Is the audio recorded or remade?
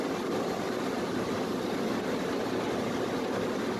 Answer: recorded